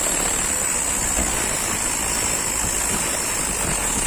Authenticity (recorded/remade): recorded